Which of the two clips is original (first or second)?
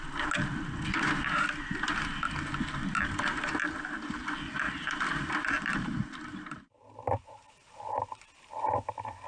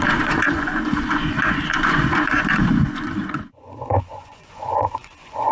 first